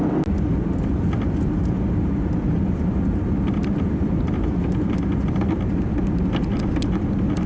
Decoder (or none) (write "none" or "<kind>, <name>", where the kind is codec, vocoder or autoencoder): none